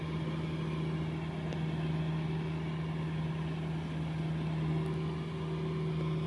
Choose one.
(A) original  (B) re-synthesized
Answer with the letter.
A